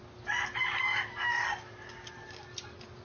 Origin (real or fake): real